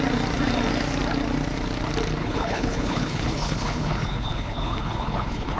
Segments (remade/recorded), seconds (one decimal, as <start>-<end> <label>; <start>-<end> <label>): 0.0-2.2 recorded; 2.2-5.6 remade